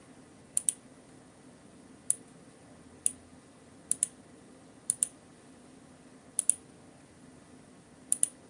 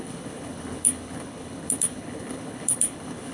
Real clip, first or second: first